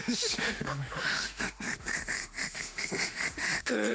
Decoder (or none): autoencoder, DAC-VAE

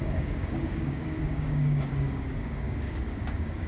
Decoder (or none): codec, DAC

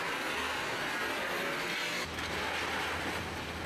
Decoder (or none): none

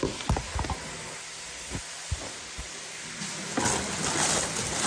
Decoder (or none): none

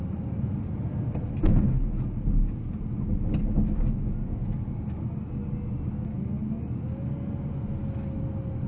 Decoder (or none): none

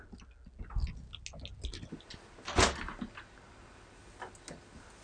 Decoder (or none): none